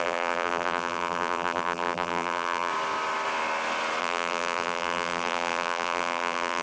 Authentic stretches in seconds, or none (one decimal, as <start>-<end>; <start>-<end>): 2.7-4.0